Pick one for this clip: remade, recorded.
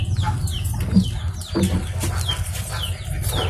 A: recorded